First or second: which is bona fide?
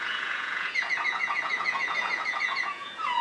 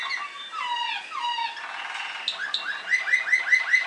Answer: second